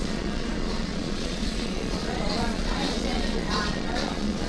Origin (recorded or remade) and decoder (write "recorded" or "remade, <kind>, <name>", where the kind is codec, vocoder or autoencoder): remade, vocoder, Vocos